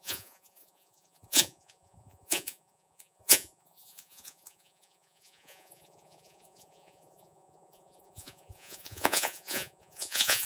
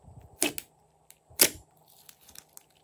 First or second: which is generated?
first